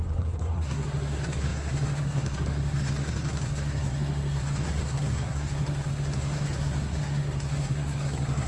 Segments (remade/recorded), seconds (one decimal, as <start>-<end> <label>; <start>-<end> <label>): 0.0-8.5 remade